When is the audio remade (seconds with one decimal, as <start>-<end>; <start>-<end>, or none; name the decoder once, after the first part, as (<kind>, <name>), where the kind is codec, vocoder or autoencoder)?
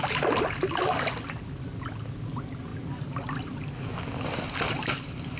none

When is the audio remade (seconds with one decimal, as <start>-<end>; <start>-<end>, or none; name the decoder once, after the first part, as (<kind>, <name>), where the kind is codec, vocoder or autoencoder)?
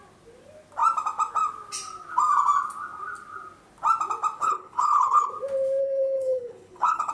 4.4-5.3 (codec, HILCodec); 5.8-7.1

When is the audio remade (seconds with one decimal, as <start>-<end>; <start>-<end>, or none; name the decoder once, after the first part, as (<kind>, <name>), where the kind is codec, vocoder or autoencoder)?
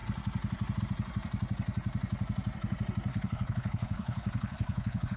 3.1-5.2 (codec, HILCodec)